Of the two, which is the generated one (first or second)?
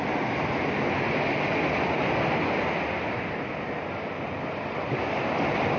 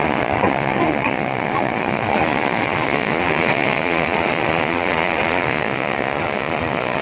second